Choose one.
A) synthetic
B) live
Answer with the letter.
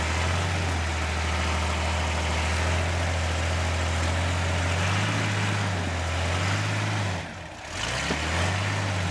B